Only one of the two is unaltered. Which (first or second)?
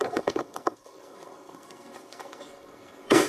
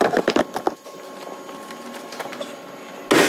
second